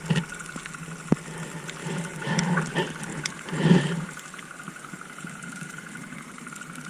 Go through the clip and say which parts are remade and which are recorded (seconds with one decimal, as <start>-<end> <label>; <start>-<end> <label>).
0.0-1.8 recorded; 1.8-2.5 remade; 2.5-3.1 recorded; 3.1-6.5 remade; 6.5-6.9 recorded